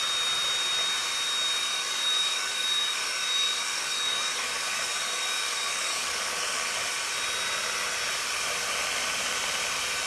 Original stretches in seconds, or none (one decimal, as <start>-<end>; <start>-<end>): 0.0-1.6; 6.7-10.1